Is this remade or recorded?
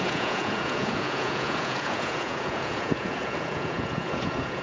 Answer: remade